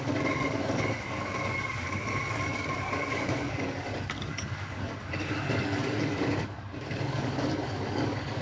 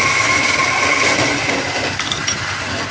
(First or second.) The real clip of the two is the second